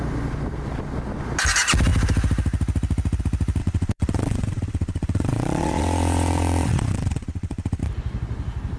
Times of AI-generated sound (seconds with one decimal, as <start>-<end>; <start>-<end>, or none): 3.6-7.8